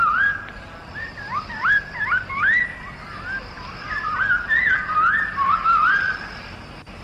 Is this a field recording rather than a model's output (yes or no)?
yes